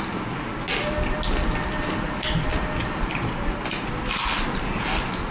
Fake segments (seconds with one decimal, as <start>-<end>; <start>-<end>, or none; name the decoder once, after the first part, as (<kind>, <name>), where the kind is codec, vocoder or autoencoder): 2.5-4.0 (vocoder, BigVGAN v2)